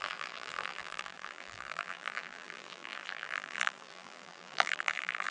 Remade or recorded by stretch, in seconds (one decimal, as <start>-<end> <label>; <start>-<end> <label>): 0.0-5.3 remade